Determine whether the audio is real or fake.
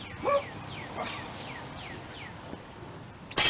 real